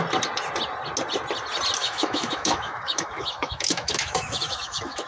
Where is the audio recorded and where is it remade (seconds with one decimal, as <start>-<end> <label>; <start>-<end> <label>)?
0.0-1.8 recorded; 1.8-5.1 remade